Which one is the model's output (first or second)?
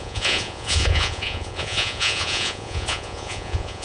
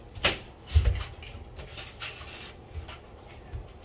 first